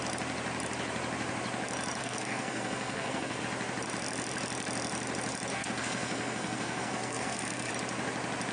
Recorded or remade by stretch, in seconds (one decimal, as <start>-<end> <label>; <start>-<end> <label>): 0.0-2.0 recorded; 2.0-3.4 remade; 3.4-5.5 recorded; 5.5-7.7 remade; 7.7-8.5 recorded